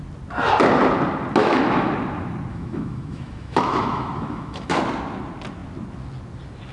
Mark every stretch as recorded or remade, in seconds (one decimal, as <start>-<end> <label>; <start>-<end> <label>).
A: 0.0-1.4 recorded; 1.4-1.9 remade; 1.9-2.5 recorded; 2.5-4.8 remade; 4.8-6.7 recorded